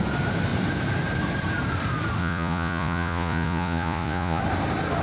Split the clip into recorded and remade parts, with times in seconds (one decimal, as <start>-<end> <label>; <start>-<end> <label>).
0.0-2.2 recorded; 2.2-4.4 remade; 4.4-5.0 recorded